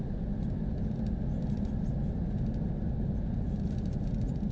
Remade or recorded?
recorded